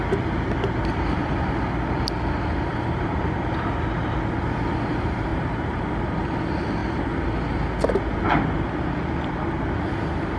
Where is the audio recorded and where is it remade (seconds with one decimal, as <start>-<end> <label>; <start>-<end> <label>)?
0.0-2.7 recorded; 2.7-3.7 remade; 3.7-5.3 recorded; 5.3-6.1 remade; 6.1-10.4 recorded